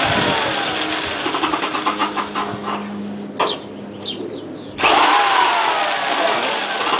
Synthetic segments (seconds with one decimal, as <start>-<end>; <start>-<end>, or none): 3.4-5.2